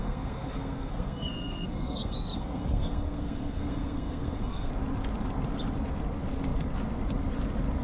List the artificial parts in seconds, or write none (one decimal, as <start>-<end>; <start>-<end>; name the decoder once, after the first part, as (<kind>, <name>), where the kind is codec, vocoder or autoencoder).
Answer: 0.0-4.7 (codec, SNAC)